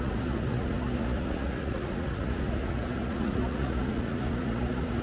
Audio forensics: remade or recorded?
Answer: remade